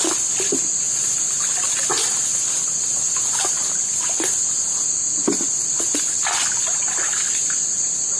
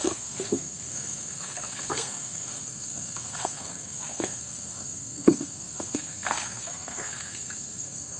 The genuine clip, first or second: first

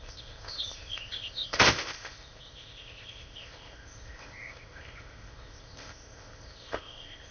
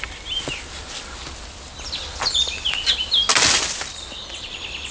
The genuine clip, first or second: second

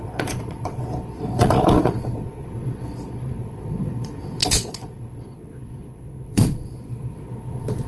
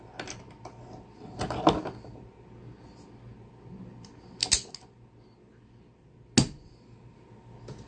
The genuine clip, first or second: second